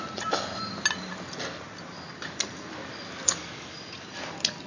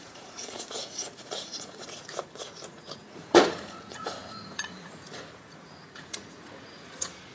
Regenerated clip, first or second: second